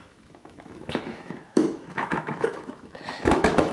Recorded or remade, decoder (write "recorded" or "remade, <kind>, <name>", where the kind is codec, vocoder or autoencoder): remade, autoencoder, DAC-VAE